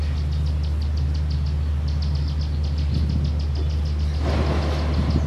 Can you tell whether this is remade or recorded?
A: recorded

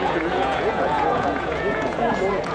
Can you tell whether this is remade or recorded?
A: remade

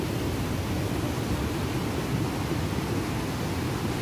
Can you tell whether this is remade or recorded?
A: recorded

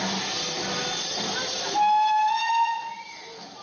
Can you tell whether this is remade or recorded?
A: recorded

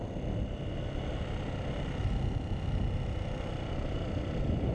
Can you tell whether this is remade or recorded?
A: recorded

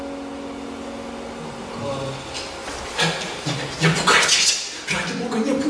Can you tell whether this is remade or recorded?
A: recorded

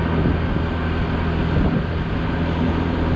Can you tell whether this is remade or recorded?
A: recorded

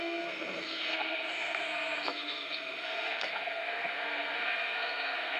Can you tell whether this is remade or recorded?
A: remade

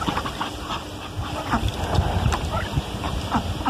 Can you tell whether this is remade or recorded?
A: recorded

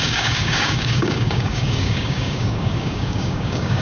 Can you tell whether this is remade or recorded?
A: remade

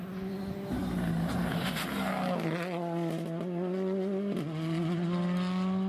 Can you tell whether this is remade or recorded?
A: recorded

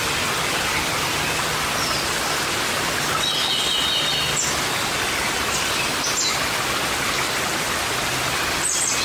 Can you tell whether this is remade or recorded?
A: recorded